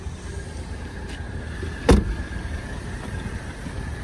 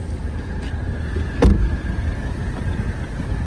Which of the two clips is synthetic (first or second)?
first